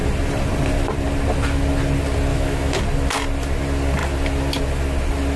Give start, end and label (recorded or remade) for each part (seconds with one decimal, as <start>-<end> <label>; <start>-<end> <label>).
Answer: 0.0-2.3 recorded; 2.3-2.8 remade; 2.8-5.4 recorded